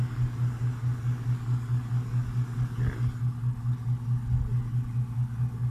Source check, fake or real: real